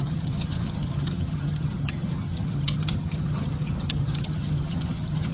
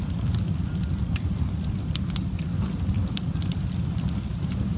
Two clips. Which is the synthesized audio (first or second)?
first